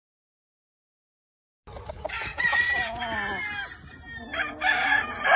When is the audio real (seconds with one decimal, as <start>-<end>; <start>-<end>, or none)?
0.0-2.3; 3.0-5.4